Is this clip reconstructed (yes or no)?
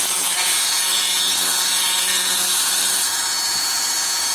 yes